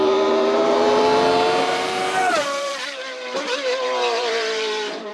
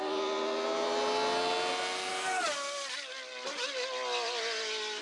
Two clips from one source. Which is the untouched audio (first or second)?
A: second